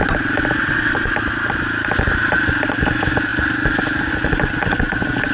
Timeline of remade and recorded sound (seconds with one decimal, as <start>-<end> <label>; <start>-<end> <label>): 0.0-0.6 recorded; 0.6-1.1 remade; 1.1-5.3 recorded